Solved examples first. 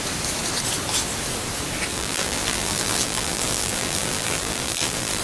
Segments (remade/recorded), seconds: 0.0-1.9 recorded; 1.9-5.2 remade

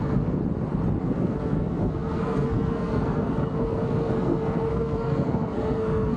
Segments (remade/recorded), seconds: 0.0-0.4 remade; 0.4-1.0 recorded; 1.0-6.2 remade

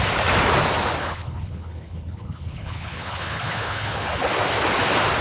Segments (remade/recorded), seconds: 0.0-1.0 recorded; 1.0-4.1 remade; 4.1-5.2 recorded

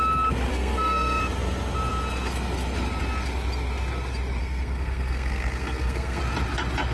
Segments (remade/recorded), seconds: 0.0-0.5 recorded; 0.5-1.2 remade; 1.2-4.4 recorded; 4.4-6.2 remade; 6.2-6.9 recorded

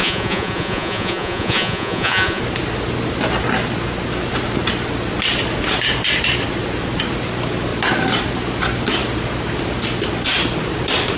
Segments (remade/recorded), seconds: 0.0-2.4 remade; 2.4-11.2 recorded